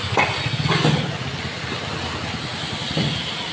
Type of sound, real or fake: real